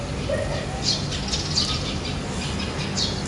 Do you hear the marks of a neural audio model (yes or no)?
no